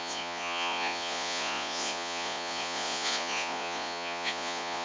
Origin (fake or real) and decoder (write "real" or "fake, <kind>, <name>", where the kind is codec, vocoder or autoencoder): fake, vocoder, Vocos